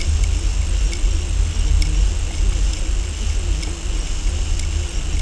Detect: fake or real real